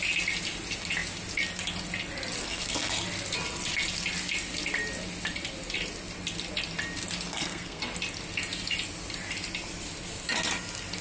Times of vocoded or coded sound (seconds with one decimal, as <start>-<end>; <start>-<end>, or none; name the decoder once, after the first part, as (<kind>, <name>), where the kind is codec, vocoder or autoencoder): 2.4-3.0 (codec, SNAC); 7.3-7.8